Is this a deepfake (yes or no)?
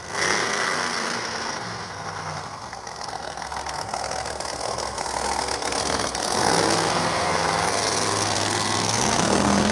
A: yes